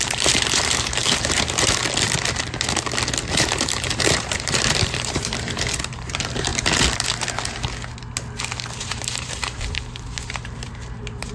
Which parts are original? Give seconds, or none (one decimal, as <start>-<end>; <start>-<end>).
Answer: 1.8-3.3; 6.5-8.8